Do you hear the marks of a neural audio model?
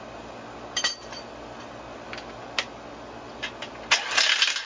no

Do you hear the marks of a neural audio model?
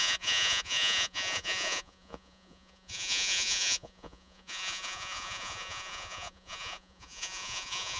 yes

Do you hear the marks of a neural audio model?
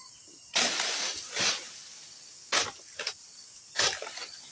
no